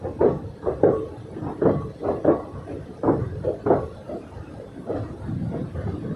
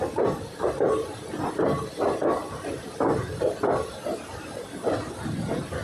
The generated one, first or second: first